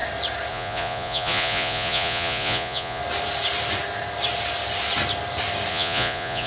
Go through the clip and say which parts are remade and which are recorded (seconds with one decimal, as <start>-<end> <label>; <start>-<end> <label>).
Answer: 0.0-0.5 recorded; 0.5-3.0 remade; 3.0-5.7 recorded; 5.7-6.5 remade